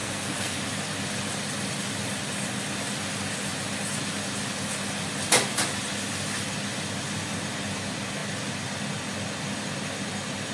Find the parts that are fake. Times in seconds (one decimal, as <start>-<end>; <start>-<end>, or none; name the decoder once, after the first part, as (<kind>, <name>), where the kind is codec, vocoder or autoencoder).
0.0-0.6 (codec, SNAC)